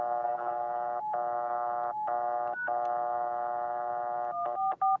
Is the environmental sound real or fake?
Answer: real